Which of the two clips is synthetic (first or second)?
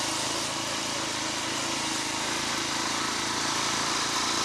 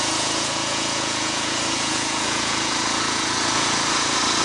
second